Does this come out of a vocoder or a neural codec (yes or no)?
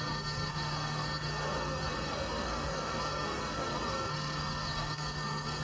yes